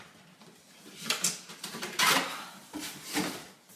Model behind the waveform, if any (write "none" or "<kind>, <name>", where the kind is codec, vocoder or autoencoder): none